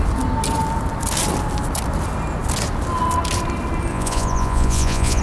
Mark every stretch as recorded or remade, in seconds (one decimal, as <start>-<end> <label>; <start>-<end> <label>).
0.0-3.9 recorded; 3.9-5.2 remade